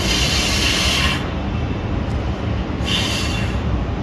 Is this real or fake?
real